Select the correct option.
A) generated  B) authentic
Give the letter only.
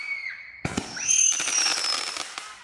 B